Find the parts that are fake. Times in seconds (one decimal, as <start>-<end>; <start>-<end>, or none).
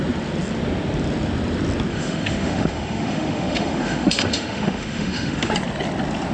1.9-5.5